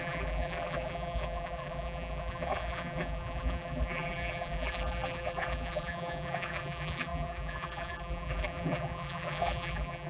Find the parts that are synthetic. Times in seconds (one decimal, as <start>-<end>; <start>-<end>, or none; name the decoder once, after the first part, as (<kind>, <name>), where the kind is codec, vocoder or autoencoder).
0.0-10.1 (vocoder, BigVGAN v2)